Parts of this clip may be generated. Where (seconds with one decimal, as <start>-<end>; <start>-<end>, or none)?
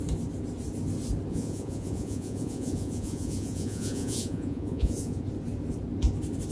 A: 1.3-5.2